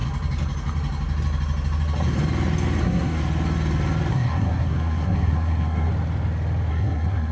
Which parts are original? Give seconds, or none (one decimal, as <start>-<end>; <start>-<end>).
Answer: 0.0-2.8; 3.2-4.1; 5.9-6.7